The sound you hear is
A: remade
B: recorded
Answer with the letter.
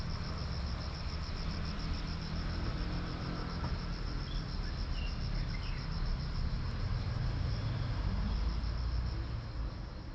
B